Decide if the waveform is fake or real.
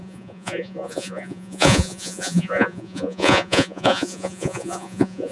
fake